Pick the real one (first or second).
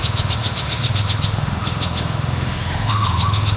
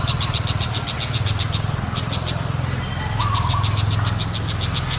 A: second